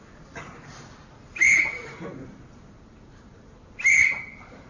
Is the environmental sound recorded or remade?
remade